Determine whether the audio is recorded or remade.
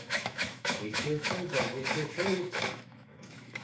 remade